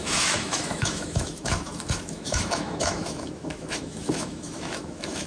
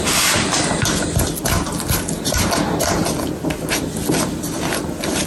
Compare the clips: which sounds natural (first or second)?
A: second